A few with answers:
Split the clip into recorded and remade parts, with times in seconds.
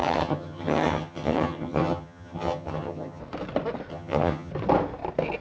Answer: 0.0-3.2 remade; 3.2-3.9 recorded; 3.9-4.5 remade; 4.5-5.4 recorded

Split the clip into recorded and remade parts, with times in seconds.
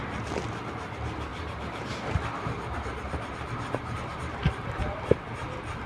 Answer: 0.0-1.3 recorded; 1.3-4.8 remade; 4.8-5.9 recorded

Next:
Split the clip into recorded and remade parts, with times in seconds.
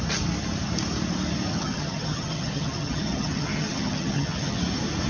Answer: 0.0-1.5 recorded; 1.5-4.6 remade; 4.6-5.1 recorded